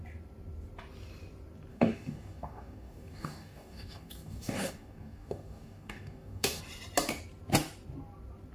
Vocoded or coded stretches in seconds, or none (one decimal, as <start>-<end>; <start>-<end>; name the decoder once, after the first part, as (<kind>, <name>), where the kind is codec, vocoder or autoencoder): 1.7-6.6 (codec, DAC)